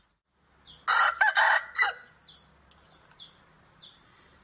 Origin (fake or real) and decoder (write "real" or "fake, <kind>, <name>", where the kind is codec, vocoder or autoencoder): real